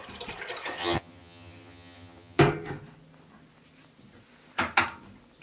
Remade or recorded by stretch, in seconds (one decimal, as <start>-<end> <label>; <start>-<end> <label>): 0.0-0.8 recorded; 0.8-2.4 remade; 2.4-5.4 recorded